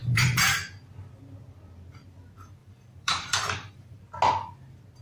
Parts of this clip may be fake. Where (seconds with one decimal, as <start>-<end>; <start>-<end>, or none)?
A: 0.0-0.5; 2.6-4.0